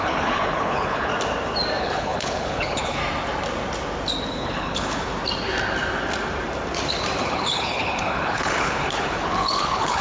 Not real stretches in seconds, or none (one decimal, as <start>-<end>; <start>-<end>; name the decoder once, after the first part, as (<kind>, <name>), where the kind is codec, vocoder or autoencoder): 0.0-1.1 (codec, HILCodec); 1.8-3.0; 4.3-5.1; 7.2-10.0

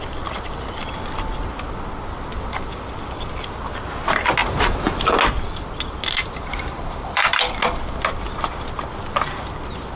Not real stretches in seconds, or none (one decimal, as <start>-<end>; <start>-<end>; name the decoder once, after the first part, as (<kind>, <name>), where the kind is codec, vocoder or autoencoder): 4.4-5.2 (vocoder, BigVGAN v2); 6.2-7.4

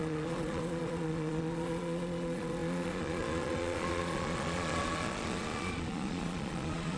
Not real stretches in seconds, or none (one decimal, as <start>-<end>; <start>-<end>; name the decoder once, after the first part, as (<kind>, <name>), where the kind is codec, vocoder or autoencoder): 0.0-7.0 (vocoder, Vocos)

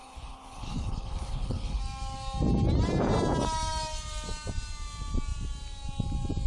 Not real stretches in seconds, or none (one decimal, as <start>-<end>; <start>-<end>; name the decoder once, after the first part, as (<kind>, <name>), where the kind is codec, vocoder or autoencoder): 0.0-1.8 (codec, HILCodec)

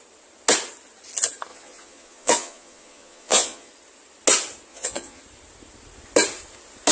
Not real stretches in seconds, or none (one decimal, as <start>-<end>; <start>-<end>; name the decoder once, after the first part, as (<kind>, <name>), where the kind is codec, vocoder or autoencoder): 1.5-3.7 (vocoder, Vocos); 4.7-5.2